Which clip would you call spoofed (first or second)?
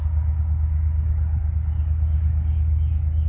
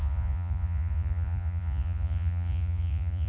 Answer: second